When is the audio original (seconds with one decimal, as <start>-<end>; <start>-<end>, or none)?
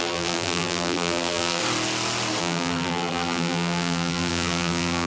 1.6-2.4